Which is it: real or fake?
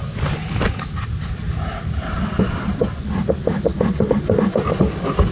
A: real